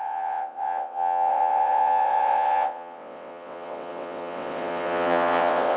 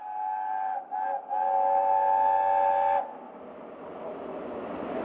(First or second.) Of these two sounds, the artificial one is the first